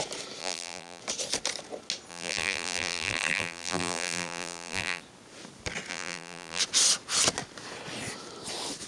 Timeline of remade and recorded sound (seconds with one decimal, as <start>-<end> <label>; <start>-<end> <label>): 0.0-0.4 recorded; 0.4-1.0 remade; 1.0-2.1 recorded; 2.1-5.0 remade; 5.0-5.9 recorded; 5.9-6.6 remade; 6.6-8.9 recorded